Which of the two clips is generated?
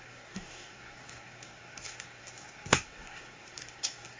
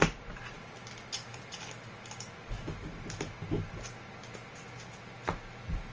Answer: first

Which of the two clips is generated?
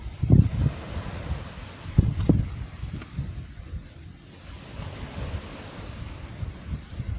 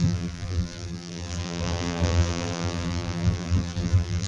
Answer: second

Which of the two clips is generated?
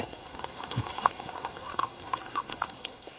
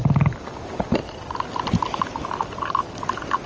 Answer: first